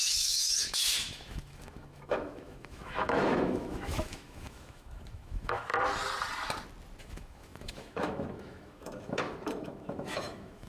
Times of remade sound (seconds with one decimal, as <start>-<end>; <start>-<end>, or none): 0.0-5.7; 7.0-10.7